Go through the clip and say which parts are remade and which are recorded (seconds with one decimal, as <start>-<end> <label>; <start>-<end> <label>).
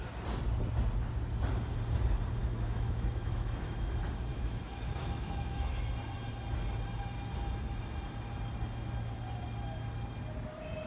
0.0-2.4 recorded; 2.4-3.9 remade; 3.9-4.3 recorded; 4.3-5.9 remade; 5.9-10.9 recorded